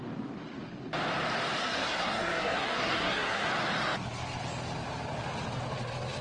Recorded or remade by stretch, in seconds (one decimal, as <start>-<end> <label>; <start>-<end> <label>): 0.0-1.6 recorded; 1.6-3.5 remade; 3.5-6.2 recorded